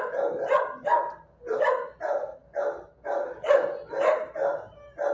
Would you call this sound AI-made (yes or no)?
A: no